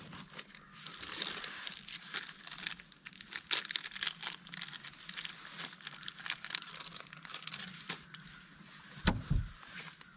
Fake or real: real